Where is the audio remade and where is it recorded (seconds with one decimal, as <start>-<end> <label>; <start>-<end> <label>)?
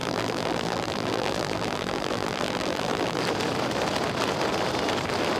0.0-3.2 remade; 3.2-5.4 recorded